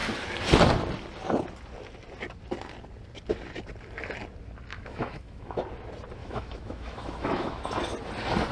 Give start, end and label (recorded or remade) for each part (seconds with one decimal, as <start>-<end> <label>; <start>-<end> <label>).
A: 0.0-4.7 recorded; 4.7-5.6 remade; 5.6-6.2 recorded; 6.2-7.6 remade; 7.6-8.5 recorded